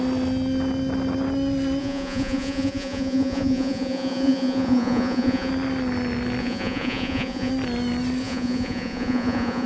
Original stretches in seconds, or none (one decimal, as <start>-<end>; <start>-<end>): 0.0-1.8; 5.5-6.4; 7.5-8.2